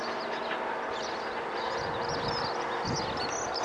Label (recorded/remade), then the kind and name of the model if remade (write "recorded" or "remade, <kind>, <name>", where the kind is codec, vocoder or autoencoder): recorded